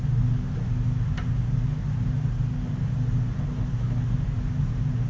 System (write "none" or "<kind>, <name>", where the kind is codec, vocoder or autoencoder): none